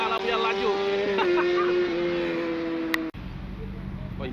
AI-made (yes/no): no